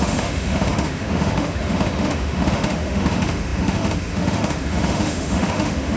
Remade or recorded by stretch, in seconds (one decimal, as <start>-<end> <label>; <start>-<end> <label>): 0.0-6.0 remade